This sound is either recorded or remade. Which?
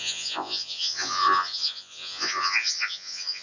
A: remade